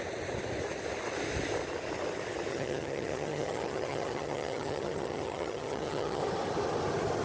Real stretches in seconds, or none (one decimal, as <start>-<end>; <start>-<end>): 0.0-2.5; 6.2-7.2